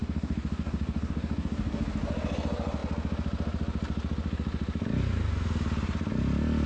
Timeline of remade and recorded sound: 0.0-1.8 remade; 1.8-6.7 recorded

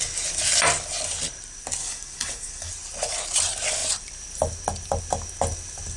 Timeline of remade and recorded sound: 0.0-1.8 recorded; 1.8-2.7 remade; 2.7-6.0 recorded